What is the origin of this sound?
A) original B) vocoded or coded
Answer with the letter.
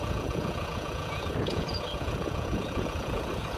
B